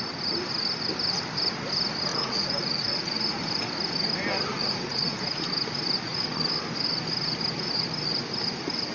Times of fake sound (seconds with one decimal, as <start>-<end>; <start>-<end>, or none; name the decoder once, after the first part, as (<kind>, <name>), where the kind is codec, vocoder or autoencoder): 2.1-3.4 (vocoder, Vocos); 4.5-5.5